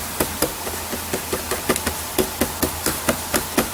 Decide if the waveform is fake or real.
real